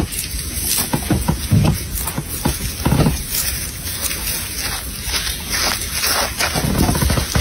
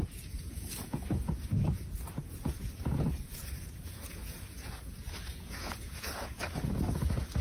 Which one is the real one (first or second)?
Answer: first